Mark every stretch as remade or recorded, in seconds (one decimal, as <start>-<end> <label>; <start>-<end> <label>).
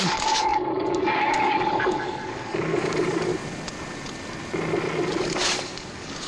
0.0-3.3 remade; 3.3-5.2 recorded; 5.2-6.3 remade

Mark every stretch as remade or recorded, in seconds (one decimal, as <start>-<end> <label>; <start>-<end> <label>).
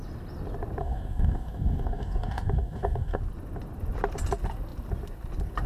0.0-0.8 recorded; 0.8-3.2 remade; 3.2-5.7 recorded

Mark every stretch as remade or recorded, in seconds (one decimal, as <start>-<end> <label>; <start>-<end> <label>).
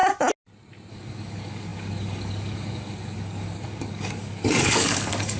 0.0-0.9 recorded; 0.9-5.4 remade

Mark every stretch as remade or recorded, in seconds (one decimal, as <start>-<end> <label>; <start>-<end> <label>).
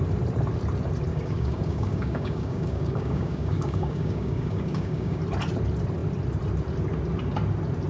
0.0-1.1 recorded; 1.1-5.2 remade; 5.2-7.9 recorded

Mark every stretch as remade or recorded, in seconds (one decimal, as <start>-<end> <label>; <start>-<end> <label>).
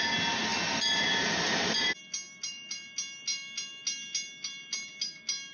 0.0-5.5 recorded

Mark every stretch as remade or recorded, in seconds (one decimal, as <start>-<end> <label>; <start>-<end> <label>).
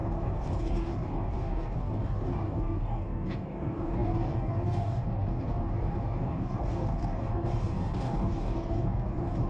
0.0-9.5 remade